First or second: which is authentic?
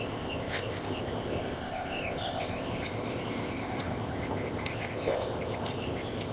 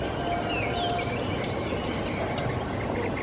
second